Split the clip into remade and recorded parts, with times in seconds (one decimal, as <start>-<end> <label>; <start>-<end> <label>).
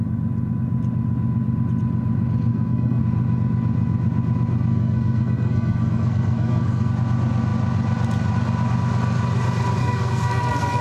0.0-2.5 recorded; 2.5-3.0 remade; 3.0-4.7 recorded; 4.7-6.9 remade; 6.9-9.8 recorded; 9.8-10.8 remade